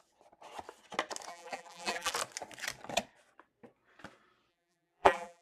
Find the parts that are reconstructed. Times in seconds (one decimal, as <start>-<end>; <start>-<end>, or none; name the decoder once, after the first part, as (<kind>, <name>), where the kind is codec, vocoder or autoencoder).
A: 1.3-2.1 (vocoder, BigVGAN v2); 4.5-5.4